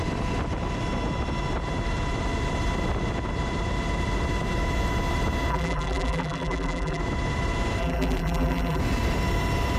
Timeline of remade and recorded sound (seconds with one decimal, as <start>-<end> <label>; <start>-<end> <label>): 0.0-5.5 recorded; 5.5-7.0 remade; 7.0-7.8 recorded; 7.8-8.8 remade; 8.8-9.8 recorded